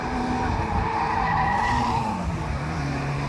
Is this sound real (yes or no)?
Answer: no